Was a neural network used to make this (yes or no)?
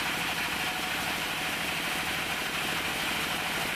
no